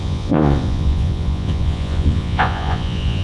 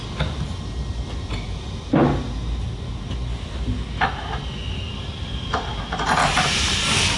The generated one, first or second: first